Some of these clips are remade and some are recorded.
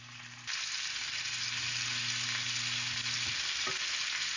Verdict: recorded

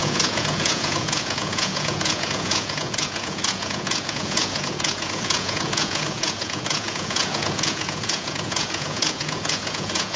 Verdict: remade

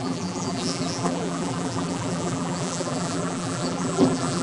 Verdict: remade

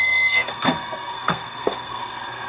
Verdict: remade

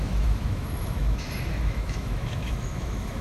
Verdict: remade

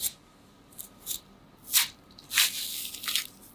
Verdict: recorded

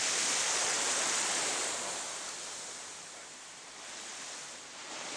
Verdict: remade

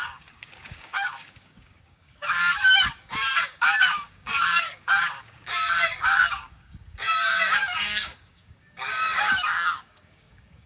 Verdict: remade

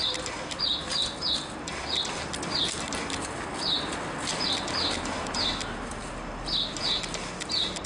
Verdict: recorded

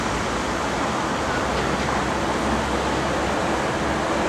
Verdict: recorded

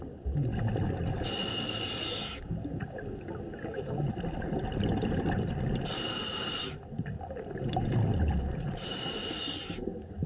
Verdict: recorded